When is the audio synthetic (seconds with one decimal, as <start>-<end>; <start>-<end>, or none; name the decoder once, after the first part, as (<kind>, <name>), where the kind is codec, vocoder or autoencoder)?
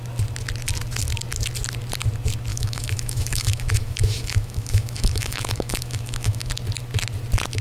2.5-6.5 (autoencoder, DAC-VAE)